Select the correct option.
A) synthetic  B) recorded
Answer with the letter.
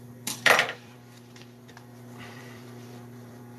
A